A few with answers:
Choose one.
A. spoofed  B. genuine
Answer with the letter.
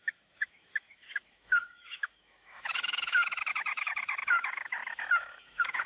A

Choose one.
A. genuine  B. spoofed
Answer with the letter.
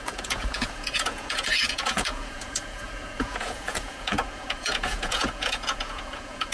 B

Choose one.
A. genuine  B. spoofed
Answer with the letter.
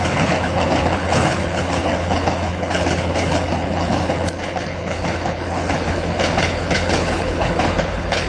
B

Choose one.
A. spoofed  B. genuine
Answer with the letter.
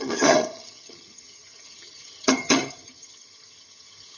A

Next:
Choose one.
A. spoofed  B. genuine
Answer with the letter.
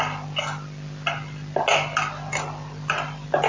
B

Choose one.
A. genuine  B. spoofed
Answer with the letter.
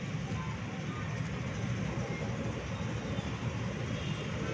A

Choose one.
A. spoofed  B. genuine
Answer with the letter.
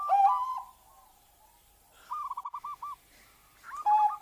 B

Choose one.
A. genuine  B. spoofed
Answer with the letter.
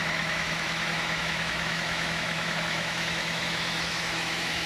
B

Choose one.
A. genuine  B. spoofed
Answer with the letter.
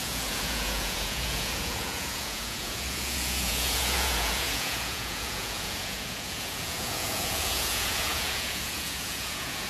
B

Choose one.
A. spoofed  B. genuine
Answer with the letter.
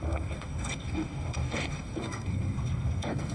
A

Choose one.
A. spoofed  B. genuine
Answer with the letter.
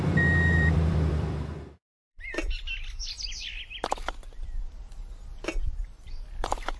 A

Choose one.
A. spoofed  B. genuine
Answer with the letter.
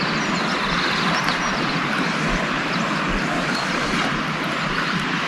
B